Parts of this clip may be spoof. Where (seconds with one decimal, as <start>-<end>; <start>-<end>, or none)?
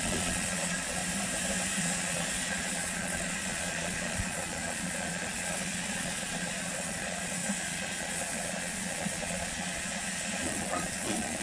0.0-1.0; 1.8-11.4